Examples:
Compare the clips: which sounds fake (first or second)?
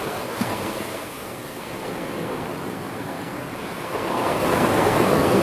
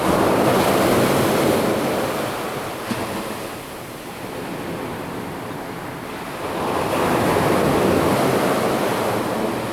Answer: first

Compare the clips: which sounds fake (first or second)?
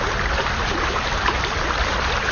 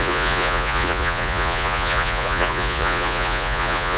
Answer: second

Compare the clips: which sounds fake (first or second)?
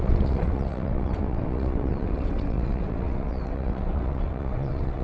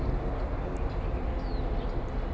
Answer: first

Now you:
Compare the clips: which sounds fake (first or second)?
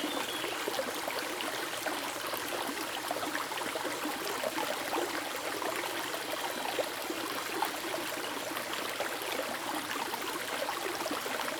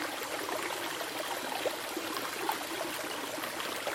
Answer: second